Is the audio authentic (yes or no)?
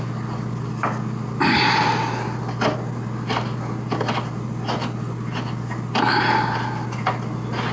yes